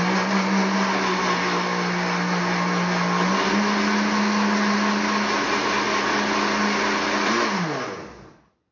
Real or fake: real